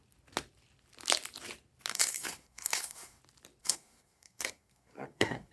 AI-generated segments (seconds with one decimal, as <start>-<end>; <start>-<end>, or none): 1.9-3.2; 3.6-5.5